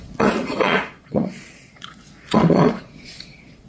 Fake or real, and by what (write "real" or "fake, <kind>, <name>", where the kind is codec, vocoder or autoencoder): fake, vocoder, Vocos